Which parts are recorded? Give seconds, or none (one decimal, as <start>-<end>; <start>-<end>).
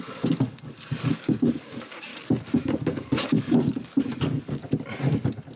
2.1-2.6; 4.6-5.6